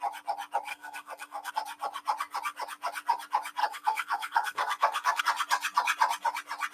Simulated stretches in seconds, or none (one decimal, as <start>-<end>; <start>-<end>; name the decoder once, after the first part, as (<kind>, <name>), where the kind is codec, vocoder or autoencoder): 0.7-1.5 (codec, SNAC); 3.6-5.2